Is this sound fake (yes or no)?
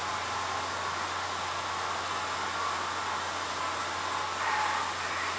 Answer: no